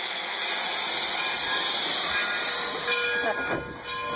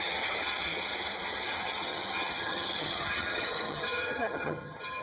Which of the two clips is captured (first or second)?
first